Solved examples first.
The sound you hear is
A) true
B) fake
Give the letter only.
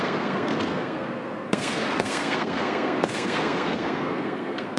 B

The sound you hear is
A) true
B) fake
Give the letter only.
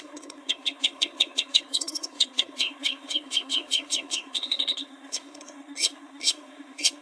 B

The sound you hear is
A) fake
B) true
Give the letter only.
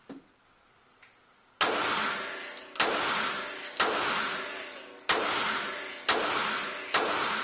B